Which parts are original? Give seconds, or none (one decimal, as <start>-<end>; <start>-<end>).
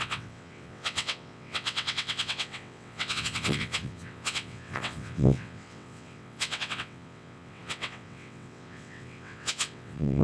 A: none